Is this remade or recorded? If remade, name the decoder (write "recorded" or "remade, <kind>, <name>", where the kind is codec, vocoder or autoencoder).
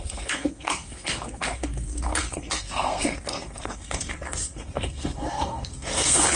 remade, codec, SNAC